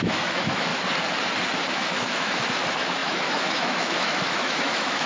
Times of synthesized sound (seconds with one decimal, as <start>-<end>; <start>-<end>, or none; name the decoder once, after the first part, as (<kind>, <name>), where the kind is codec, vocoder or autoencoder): 0.0-0.7 (autoencoder, DAC-VAE); 1.7-5.1